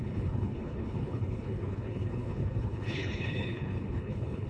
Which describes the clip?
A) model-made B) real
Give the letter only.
A